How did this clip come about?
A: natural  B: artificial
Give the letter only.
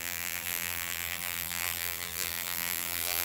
B